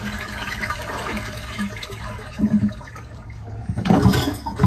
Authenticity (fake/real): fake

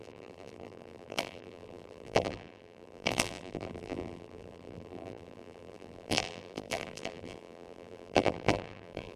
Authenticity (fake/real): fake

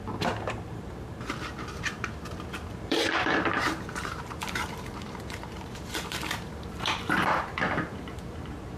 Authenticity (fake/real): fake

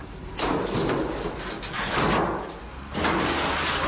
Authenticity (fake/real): real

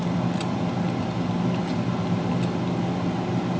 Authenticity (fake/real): real